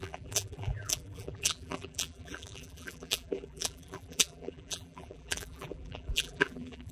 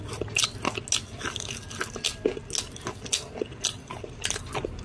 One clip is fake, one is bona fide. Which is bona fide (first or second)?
second